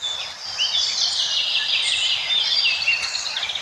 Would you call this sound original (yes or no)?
no